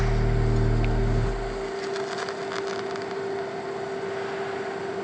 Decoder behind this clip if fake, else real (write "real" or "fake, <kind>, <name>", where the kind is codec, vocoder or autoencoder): real